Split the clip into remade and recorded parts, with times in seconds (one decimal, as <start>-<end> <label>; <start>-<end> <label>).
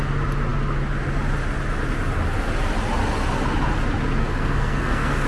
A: 0.0-4.2 recorded; 4.2-5.3 remade